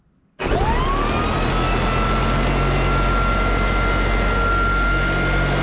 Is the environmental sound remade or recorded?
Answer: recorded